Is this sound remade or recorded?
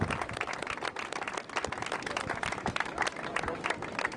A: recorded